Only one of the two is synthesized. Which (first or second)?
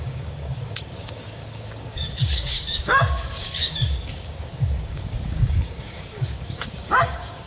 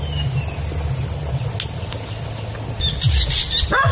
first